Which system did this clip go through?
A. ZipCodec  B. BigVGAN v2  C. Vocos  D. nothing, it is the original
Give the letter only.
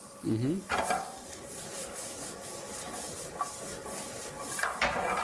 D